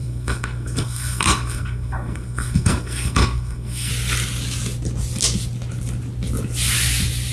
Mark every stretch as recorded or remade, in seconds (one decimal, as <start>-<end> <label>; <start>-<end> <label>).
0.0-3.9 remade; 3.9-7.3 recorded